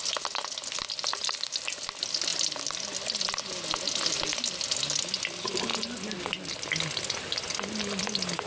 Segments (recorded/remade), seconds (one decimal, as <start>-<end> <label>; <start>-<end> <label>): 0.0-8.5 recorded